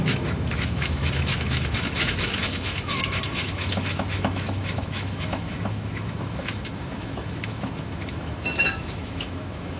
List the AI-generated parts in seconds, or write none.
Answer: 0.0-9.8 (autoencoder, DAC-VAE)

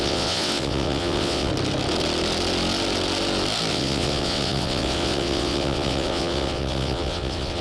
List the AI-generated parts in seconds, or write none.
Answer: 0.0-1.5 (vocoder, WaveNeXt); 3.7-7.6

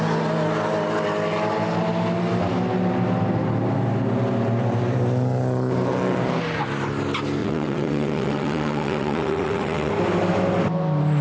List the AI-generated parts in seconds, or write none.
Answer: 7.4-9.9 (vocoder, WaveNeXt)

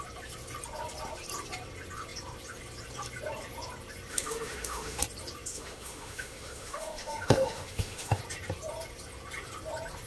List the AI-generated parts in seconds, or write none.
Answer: 4.1-5.0 (autoencoder, DAC-VAE); 5.5-8.2

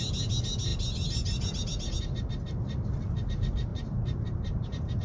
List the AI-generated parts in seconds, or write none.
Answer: 3.7-5.0 (vocoder, BigVGAN v2)